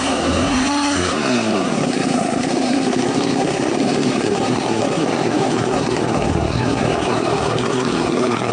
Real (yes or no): no